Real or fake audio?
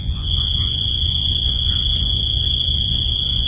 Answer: fake